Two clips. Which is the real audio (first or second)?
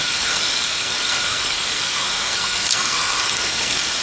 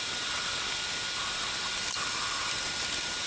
second